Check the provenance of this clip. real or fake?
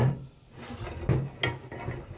real